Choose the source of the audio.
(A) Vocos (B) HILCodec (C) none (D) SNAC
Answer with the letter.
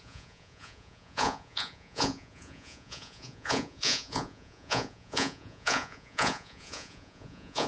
A